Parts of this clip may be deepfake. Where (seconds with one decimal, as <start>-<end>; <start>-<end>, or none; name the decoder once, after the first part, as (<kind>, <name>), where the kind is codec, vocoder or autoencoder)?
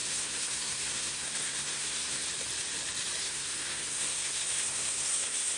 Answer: 0.0-2.3 (codec, SNAC); 3.2-5.6